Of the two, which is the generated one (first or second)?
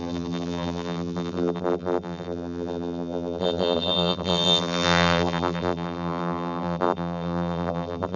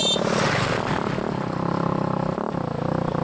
first